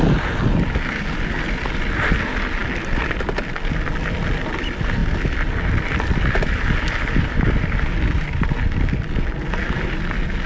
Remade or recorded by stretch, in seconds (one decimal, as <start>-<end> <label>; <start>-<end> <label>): 0.0-10.5 recorded